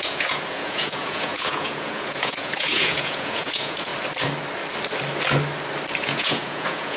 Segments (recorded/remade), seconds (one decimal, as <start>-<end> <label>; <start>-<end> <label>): 0.0-3.9 remade; 3.9-6.0 recorded; 6.0-7.0 remade